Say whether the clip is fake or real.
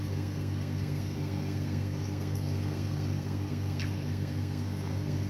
fake